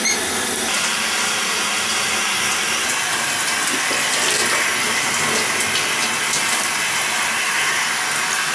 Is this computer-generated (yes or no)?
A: no